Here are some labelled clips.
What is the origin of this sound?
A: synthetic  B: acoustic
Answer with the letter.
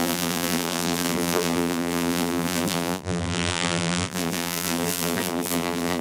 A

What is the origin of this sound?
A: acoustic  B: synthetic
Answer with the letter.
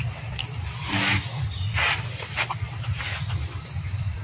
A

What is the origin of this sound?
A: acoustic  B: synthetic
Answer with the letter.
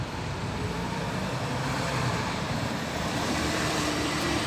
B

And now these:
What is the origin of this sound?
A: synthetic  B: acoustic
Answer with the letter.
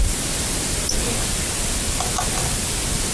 B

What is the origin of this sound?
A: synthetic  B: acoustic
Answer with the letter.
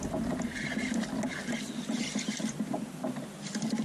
B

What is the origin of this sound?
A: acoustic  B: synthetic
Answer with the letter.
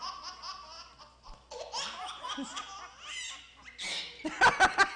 A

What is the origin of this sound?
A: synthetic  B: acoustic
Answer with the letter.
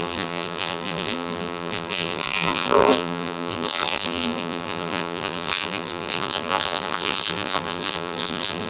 A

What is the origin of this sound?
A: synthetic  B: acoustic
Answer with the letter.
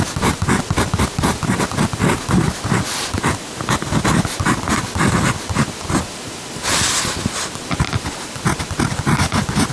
B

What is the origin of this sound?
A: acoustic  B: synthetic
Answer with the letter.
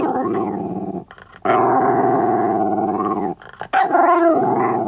A